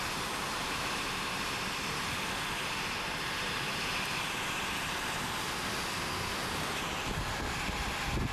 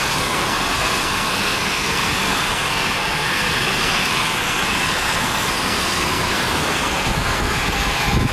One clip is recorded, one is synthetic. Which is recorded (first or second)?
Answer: first